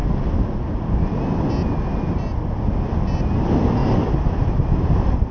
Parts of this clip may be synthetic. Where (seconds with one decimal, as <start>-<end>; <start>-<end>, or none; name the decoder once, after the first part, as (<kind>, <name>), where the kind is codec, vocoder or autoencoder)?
3.8-5.3 (vocoder, BigVGAN v2)